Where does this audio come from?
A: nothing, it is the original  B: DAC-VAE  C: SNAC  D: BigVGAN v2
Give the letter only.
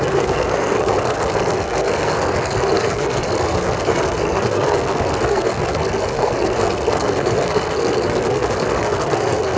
C